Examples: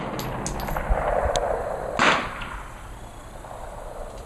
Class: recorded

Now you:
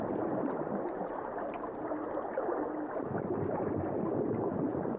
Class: recorded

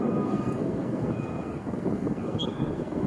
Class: remade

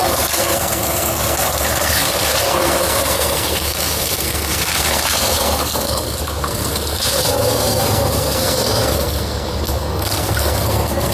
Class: remade